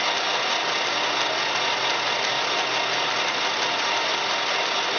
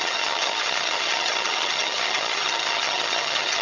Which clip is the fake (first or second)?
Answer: second